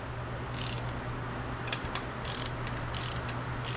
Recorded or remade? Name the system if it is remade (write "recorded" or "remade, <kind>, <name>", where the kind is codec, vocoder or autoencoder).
recorded